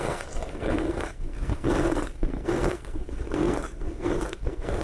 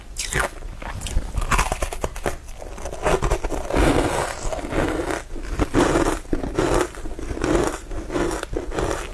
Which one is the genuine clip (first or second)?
second